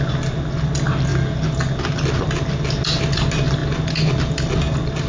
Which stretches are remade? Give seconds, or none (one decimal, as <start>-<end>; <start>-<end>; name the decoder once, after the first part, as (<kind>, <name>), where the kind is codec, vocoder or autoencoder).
none